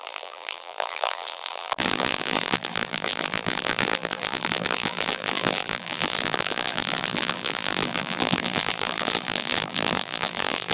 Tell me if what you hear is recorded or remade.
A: remade